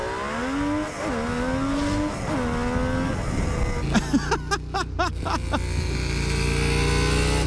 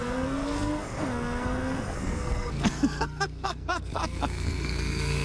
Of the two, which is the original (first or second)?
first